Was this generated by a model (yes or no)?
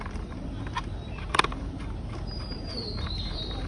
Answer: yes